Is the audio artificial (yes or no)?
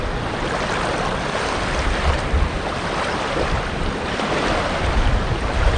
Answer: no